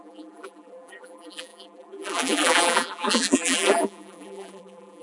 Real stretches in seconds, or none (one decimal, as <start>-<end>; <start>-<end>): none